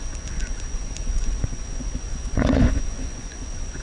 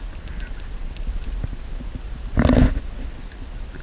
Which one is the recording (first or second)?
second